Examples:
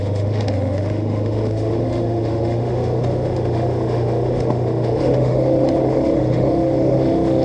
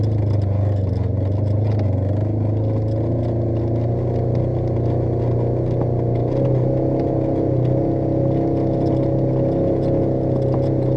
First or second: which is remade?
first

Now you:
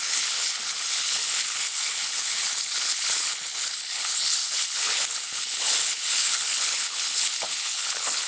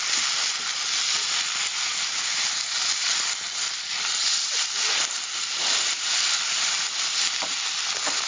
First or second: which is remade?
first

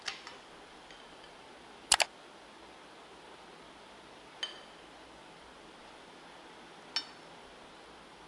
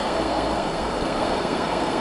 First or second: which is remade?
second